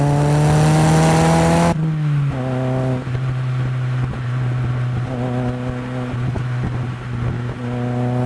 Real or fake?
real